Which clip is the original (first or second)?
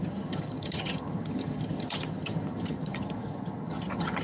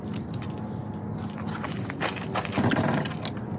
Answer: second